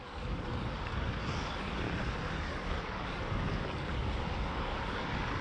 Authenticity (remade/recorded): remade